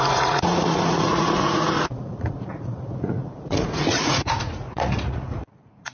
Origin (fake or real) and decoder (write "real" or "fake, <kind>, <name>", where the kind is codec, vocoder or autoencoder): fake, vocoder, Vocos